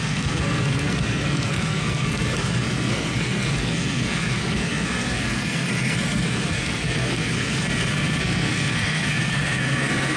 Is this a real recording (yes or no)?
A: no